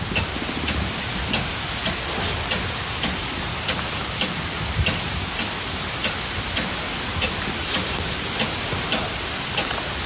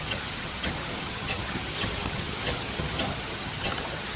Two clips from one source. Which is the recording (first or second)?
first